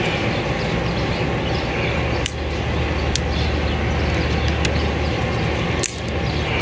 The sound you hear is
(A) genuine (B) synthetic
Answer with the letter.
A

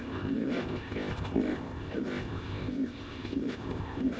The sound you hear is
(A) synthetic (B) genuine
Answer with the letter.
A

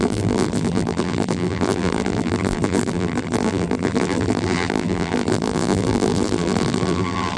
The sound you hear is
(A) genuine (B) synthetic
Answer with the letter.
B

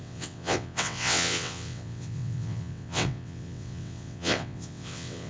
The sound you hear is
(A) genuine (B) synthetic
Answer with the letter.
B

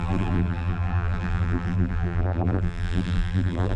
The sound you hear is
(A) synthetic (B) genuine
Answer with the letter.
A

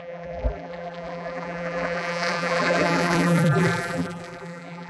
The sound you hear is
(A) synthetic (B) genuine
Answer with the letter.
A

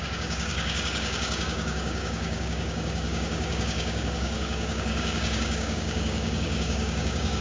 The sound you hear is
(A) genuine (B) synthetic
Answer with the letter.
B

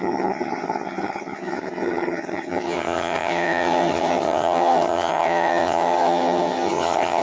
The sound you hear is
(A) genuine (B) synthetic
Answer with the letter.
B